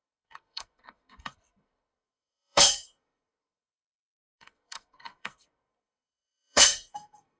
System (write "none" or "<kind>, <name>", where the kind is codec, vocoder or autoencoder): codec, SNAC